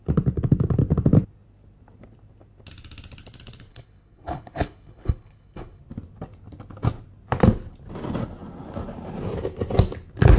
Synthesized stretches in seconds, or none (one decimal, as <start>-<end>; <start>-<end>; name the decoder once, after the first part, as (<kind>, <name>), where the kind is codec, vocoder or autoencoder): 3.7-5.8 (codec, HILCodec)